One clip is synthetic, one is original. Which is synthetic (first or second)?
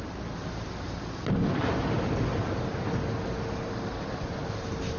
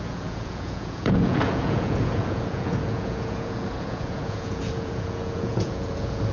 second